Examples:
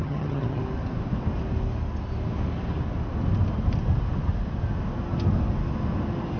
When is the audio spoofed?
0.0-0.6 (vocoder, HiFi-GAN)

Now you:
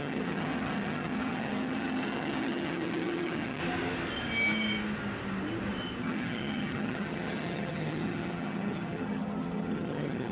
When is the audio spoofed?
0.0-3.6 (vocoder, HiFi-GAN); 6.0-10.3

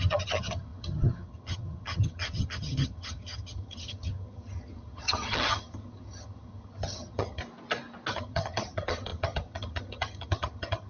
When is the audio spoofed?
0.0-7.4 (vocoder, HiFi-GAN); 8.1-10.9